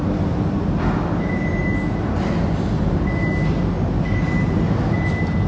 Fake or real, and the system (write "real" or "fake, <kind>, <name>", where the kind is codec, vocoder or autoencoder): real